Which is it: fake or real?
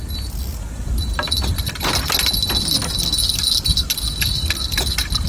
real